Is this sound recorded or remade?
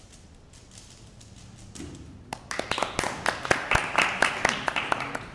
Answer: recorded